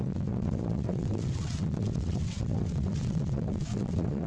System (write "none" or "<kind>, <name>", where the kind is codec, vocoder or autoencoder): vocoder, WaveNeXt